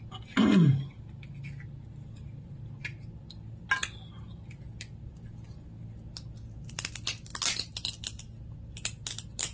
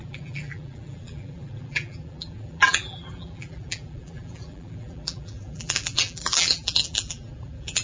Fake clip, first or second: second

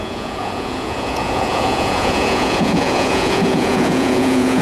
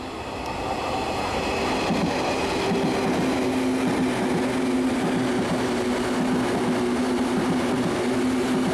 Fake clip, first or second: first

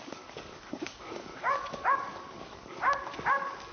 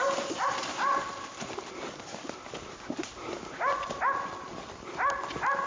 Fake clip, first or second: first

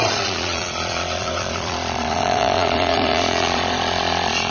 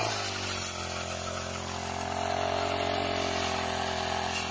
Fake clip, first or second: first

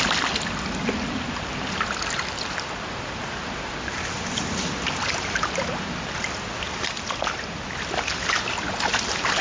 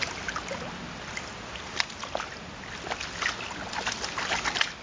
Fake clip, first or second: first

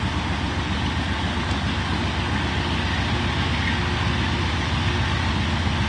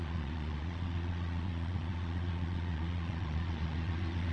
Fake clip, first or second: second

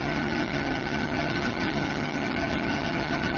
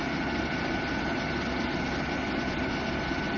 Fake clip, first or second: first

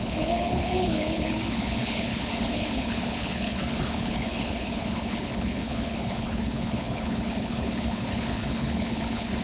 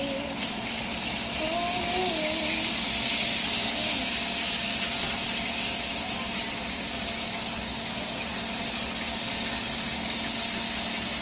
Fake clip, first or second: first